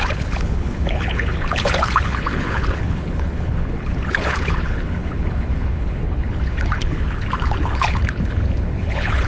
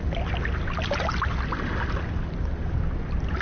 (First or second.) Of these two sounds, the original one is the second